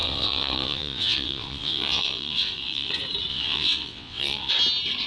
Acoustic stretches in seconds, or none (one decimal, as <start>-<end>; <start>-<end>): 2.9-3.3; 4.5-5.1